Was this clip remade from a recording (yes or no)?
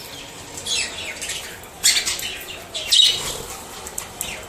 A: no